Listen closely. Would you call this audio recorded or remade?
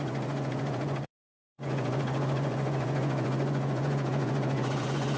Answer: remade